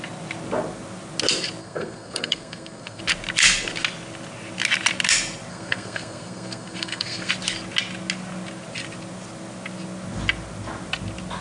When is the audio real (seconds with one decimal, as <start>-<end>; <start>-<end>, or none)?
0.0-1.6; 3.0-5.5; 7.3-11.4